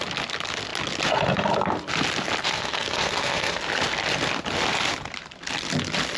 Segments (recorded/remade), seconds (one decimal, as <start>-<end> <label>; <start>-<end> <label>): 0.0-2.4 recorded; 2.4-3.6 remade; 3.6-6.2 recorded